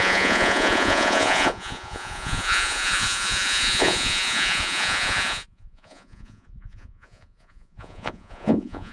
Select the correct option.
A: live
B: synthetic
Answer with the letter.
B